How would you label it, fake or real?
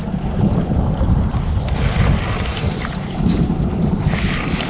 real